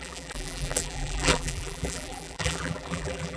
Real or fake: fake